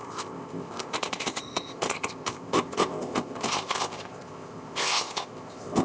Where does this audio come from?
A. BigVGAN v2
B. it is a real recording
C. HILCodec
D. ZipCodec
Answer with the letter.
D